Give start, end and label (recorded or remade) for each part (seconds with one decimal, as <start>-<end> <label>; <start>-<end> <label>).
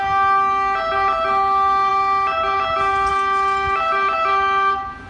0.0-5.1 recorded